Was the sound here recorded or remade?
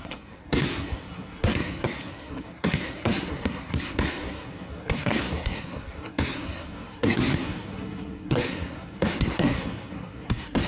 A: remade